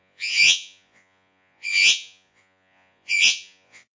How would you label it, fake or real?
fake